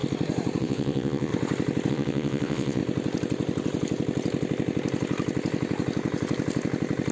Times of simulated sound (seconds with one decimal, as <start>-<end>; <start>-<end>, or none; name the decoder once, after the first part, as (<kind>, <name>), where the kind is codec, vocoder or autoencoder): 0.6-1.3 (vocoder, WaveNeXt); 1.9-2.8